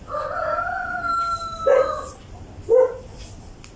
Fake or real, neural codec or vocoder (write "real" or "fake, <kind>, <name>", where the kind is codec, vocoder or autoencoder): real